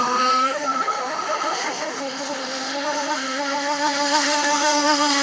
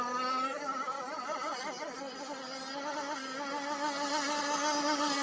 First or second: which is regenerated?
first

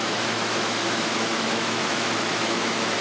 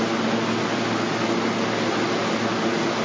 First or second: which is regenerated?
first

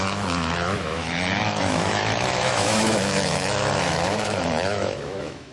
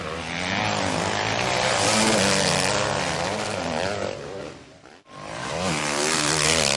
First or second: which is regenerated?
first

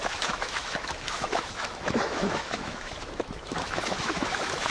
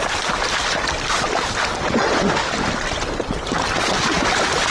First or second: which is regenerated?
first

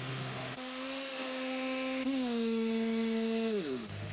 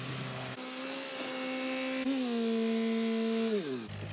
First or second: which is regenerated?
first